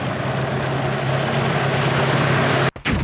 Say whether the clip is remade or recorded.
recorded